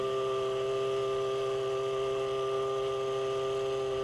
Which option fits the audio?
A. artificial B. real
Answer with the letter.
B